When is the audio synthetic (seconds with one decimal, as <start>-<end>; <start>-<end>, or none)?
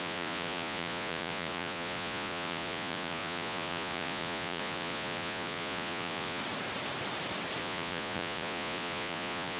0.0-6.4; 7.6-9.6